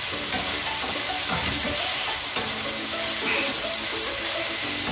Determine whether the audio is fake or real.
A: real